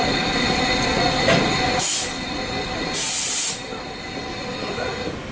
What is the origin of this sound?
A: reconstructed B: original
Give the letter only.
B